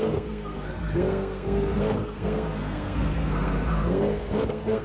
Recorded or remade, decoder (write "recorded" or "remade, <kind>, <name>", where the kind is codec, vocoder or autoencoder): remade, codec, SNAC